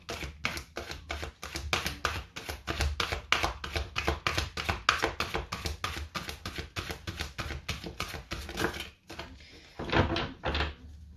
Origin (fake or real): real